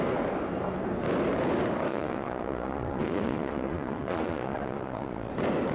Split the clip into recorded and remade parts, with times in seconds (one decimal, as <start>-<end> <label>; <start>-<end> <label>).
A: 0.0-1.9 recorded; 1.9-5.3 remade; 5.3-5.7 recorded